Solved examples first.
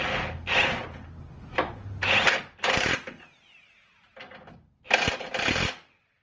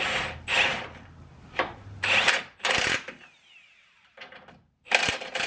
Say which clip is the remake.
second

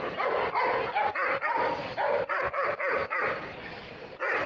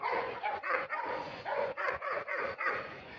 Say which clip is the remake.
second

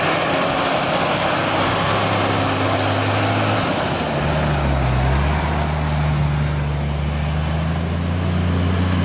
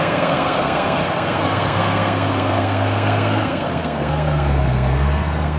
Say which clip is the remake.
second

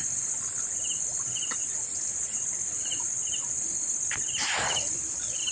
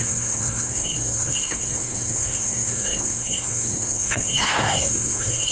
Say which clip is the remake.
second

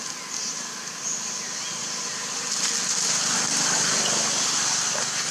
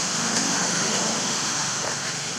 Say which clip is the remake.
second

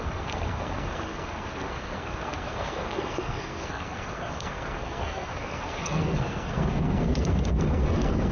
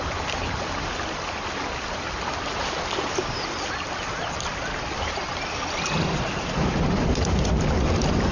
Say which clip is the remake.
first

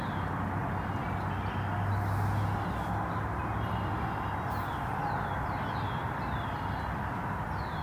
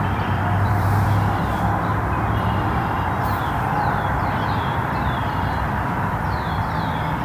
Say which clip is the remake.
second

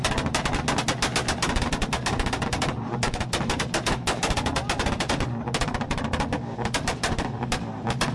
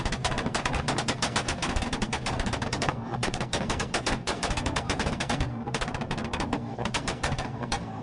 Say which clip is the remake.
second